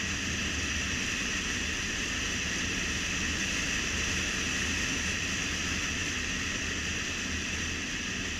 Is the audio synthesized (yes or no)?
no